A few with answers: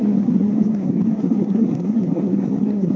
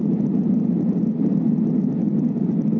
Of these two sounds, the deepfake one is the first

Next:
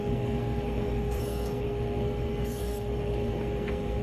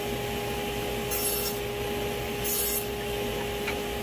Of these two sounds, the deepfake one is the first